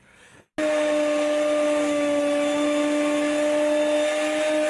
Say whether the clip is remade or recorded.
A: recorded